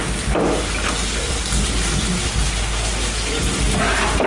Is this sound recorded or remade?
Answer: recorded